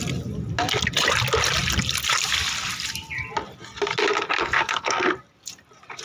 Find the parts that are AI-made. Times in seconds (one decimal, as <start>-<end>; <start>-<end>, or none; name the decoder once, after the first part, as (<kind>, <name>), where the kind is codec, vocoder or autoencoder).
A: 4.4-5.1 (codec, SNAC)